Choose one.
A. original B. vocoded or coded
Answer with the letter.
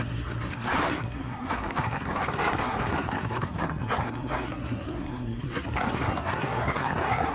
B